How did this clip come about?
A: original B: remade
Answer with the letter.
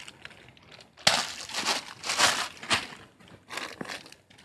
A